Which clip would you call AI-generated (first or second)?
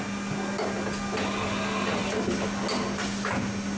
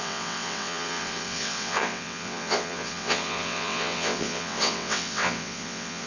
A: second